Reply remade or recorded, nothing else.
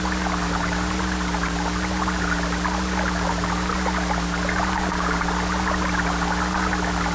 recorded